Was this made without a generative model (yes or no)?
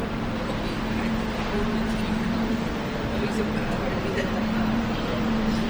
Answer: no